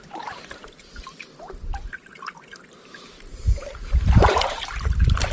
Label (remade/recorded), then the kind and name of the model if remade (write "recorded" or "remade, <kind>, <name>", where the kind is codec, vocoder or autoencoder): remade, vocoder, BigVGAN v2